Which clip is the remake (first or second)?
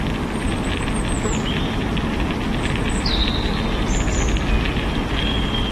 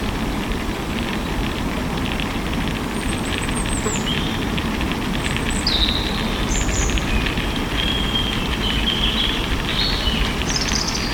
second